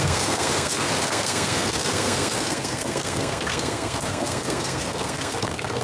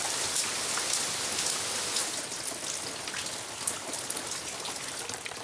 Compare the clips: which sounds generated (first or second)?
first